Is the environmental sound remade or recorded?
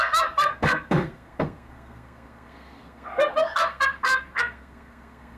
remade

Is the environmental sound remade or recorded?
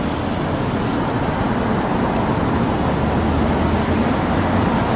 recorded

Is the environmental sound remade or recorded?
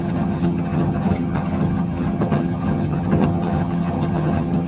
remade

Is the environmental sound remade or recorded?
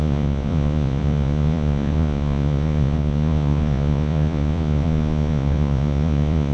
remade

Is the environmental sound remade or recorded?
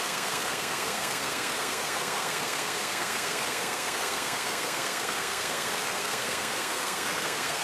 remade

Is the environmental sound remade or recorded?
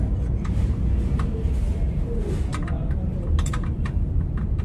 recorded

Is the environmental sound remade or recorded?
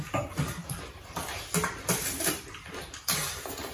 remade